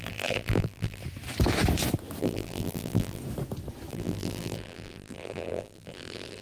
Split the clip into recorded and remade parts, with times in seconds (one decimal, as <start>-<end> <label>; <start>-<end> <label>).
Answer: 0.0-1.0 remade; 1.0-2.2 recorded; 2.2-3.2 remade; 3.2-3.9 recorded; 3.9-6.4 remade